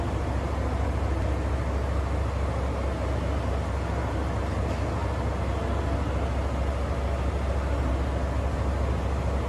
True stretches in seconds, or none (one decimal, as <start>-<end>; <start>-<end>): 0.0-9.5